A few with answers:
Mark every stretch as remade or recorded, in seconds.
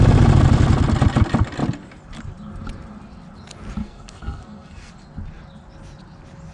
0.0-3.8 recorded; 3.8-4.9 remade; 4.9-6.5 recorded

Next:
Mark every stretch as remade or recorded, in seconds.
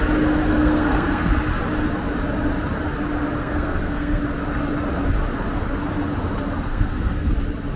0.0-0.6 recorded; 0.6-1.3 remade; 1.3-3.4 recorded; 3.4-4.2 remade; 4.2-6.7 recorded; 6.7-7.3 remade; 7.3-7.8 recorded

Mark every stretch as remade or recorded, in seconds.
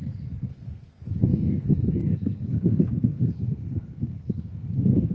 0.0-5.1 remade